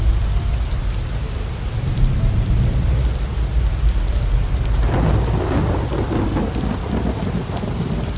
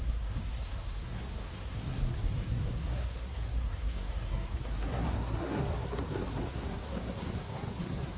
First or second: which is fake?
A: second